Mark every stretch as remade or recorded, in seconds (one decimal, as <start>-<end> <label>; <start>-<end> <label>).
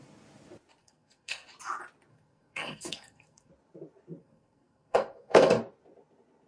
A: 0.0-0.8 recorded; 0.8-1.5 remade; 1.5-2.1 recorded; 2.1-3.5 remade; 3.5-4.2 recorded; 4.2-5.6 remade; 5.6-6.5 recorded